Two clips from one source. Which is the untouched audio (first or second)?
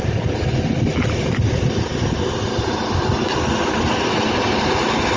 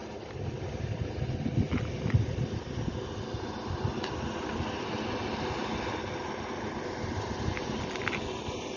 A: second